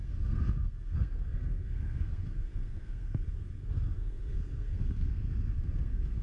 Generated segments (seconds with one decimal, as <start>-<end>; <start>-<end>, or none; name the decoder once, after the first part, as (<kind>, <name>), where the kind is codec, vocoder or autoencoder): 0.0-6.2 (codec, SNAC)